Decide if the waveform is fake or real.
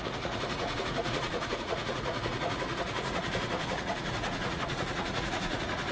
fake